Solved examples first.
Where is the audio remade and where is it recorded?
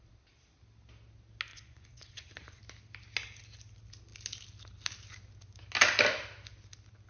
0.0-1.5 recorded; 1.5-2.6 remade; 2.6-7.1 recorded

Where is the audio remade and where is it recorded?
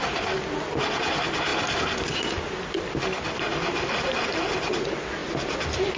0.0-6.0 recorded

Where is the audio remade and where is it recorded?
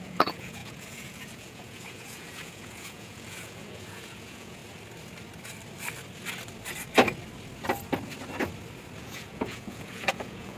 0.0-4.6 remade; 4.6-9.0 recorded; 9.0-10.6 remade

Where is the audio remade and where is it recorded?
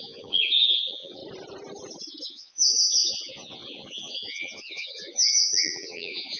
0.0-1.2 remade; 1.2-2.3 recorded; 2.3-6.4 remade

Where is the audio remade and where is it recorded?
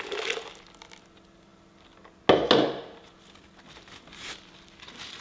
0.0-5.2 recorded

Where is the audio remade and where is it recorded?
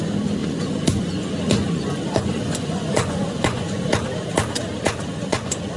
0.0-0.4 recorded; 0.4-3.9 remade; 3.9-5.1 recorded; 5.1-5.8 remade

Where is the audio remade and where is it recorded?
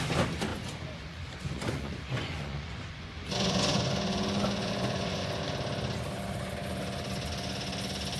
0.0-0.5 recorded; 0.5-5.4 remade; 5.4-8.2 recorded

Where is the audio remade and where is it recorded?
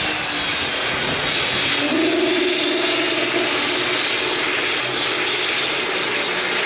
0.0-0.5 recorded; 0.5-1.4 remade; 1.4-6.7 recorded